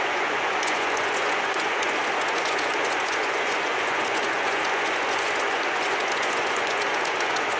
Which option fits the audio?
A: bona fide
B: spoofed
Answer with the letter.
B